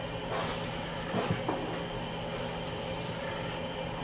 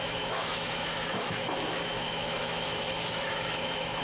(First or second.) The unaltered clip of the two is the first